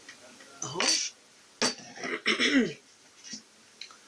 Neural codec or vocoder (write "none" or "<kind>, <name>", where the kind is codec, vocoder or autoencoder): none